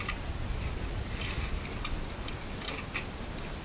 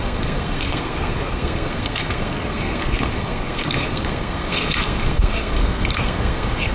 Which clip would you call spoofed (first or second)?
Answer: second